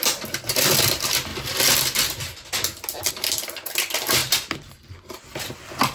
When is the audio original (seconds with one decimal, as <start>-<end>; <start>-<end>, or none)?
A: 1.3-3.1